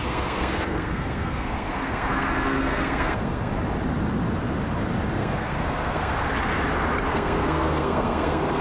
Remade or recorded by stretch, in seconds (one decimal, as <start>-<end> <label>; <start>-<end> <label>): 0.0-3.5 remade; 3.5-5.2 recorded; 5.2-6.1 remade; 6.1-7.1 recorded; 7.1-8.6 remade